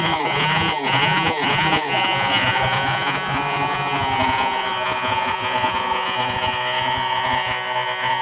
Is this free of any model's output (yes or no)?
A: no